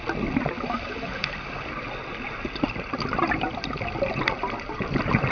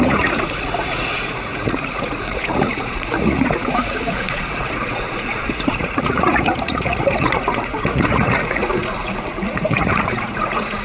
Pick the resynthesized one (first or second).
second